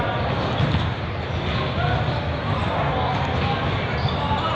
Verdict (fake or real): real